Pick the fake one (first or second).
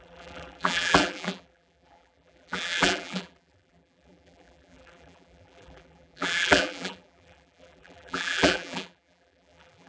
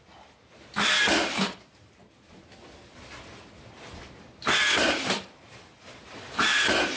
first